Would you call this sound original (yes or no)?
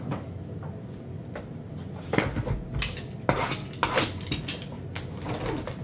yes